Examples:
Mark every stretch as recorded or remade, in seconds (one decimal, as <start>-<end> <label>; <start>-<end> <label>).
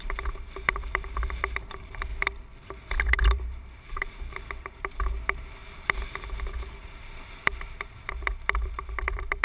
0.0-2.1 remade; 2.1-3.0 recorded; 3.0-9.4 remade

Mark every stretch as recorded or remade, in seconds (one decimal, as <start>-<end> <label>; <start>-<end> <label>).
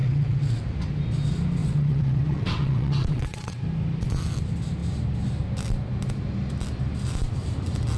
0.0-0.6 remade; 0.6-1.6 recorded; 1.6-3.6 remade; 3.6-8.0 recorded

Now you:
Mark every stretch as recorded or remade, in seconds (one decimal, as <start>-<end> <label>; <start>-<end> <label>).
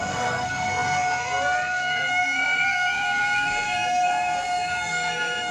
0.0-5.5 remade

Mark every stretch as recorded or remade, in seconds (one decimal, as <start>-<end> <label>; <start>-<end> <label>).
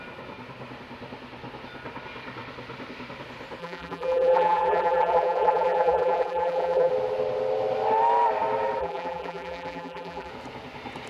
0.0-3.6 recorded; 3.6-6.9 remade; 6.9-8.8 recorded; 8.8-10.3 remade; 10.3-11.1 recorded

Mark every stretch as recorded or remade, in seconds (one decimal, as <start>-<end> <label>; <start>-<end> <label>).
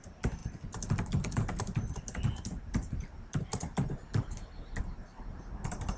0.0-0.4 remade; 0.4-2.4 recorded; 2.4-4.0 remade; 4.0-4.8 recorded; 4.8-6.0 remade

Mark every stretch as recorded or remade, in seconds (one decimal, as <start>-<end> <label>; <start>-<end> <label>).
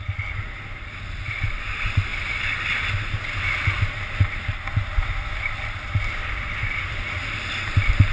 0.0-8.1 recorded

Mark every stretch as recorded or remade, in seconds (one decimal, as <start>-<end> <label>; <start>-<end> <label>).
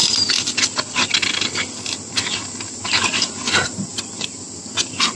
0.0-5.1 recorded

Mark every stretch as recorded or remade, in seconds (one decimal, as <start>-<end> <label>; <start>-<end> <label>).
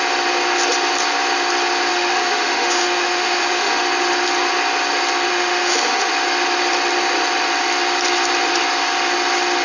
0.0-1.9 recorded; 1.9-3.8 remade; 3.8-5.3 recorded; 5.3-6.1 remade; 6.1-9.6 recorded